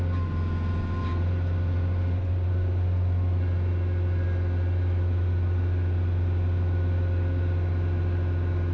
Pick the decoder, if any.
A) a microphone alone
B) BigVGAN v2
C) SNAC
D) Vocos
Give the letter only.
A